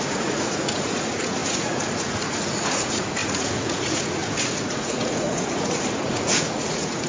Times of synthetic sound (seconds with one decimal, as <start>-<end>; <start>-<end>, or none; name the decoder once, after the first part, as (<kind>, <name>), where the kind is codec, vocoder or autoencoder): 0.0-7.1 (vocoder, Vocos)